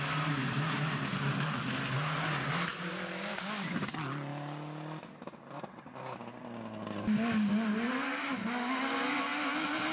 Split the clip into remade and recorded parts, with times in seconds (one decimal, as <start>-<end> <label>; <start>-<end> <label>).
0.0-9.9 recorded